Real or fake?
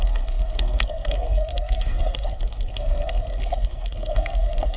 fake